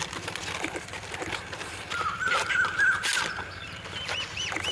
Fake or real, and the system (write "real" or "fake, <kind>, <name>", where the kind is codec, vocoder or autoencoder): real